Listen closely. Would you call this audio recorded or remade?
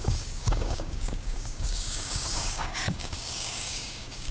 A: remade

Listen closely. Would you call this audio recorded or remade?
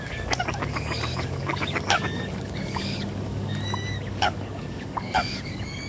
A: remade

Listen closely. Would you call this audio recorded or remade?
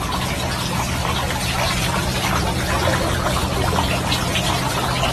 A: recorded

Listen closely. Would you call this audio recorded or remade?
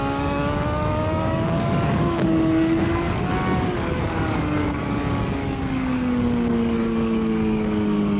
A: remade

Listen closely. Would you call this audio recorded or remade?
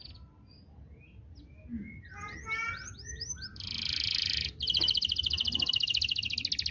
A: recorded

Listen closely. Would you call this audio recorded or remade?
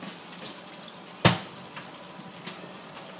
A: recorded